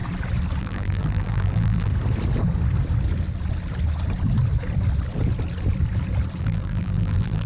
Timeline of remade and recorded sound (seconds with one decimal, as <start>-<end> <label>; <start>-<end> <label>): 0.0-0.6 recorded; 0.6-1.9 remade; 1.9-6.4 recorded; 6.4-7.5 remade